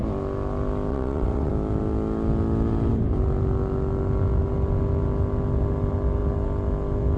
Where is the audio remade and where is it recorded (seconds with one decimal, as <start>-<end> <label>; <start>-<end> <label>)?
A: 0.0-0.9 recorded; 0.9-1.5 remade; 1.5-7.2 recorded